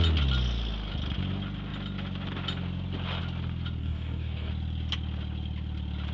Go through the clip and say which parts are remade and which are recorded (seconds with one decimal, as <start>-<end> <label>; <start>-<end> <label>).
0.0-3.8 recorded; 3.8-4.5 remade; 4.5-6.1 recorded